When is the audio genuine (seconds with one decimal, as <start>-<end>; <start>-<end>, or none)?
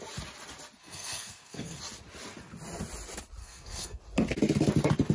0.0-0.8; 1.8-3.4; 4.0-5.1